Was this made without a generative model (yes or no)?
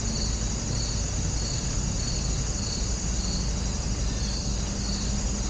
yes